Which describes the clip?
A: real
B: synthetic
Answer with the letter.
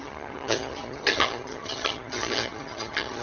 B